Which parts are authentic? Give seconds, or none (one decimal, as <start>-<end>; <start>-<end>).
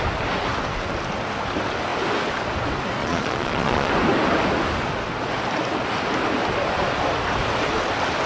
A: 0.0-3.0; 3.9-8.3